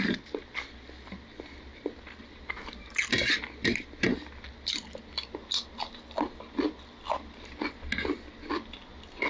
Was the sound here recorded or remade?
recorded